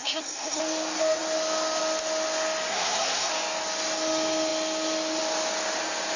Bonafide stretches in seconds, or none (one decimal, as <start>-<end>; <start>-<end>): 0.6-2.7; 3.3-6.2